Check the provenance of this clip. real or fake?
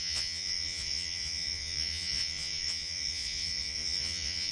fake